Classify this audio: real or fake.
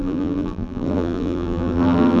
fake